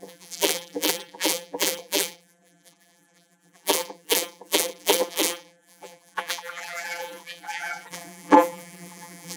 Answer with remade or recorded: remade